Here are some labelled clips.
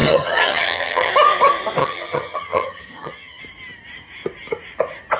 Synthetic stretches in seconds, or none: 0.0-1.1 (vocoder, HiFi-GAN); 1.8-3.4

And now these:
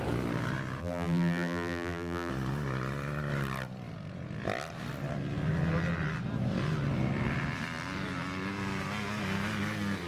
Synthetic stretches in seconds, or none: 0.8-2.3 (vocoder, BigVGAN v2)

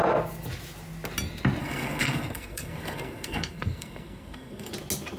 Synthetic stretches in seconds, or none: 1.6-4.7 (codec, SNAC)

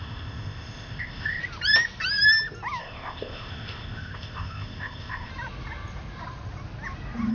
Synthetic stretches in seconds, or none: 0.0-1.4 (codec, ZipCodec); 2.8-5.3

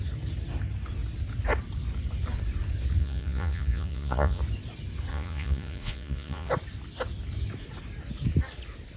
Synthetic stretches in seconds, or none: 3.0-4.4 (vocoder, Vocos); 5.1-6.5